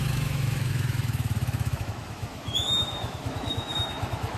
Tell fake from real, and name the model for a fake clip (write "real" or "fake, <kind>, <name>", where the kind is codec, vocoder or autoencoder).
fake, autoencoder, DAC-VAE